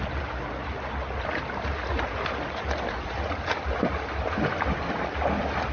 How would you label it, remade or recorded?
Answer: recorded